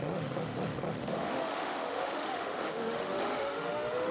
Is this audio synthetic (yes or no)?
yes